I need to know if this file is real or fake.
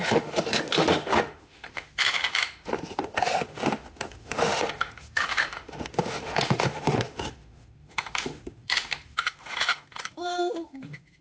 fake